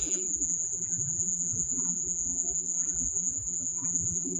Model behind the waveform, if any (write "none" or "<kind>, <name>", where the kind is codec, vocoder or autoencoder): vocoder, BigVGAN v2